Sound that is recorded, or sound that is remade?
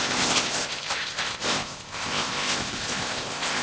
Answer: remade